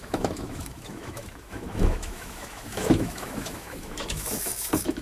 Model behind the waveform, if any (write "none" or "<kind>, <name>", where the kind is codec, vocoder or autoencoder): autoencoder, DAC-VAE